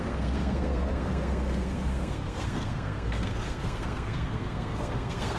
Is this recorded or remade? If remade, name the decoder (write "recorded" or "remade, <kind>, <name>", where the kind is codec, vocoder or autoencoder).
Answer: remade, codec, SNAC